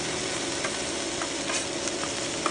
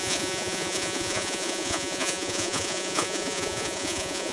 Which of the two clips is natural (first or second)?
first